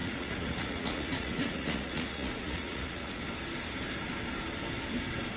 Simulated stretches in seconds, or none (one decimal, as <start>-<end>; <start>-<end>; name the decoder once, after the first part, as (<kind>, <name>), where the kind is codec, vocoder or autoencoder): 0.0-3.2 (vocoder, Vocos)